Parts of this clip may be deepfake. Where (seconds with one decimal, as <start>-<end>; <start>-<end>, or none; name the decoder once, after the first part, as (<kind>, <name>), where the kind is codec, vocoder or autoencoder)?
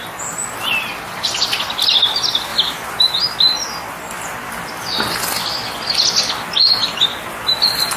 none